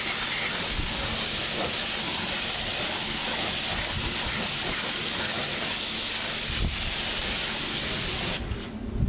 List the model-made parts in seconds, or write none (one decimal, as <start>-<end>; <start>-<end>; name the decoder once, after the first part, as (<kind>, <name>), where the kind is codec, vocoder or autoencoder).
none